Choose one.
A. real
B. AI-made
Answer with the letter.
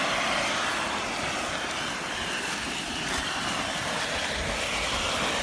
A